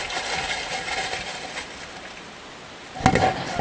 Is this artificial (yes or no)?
no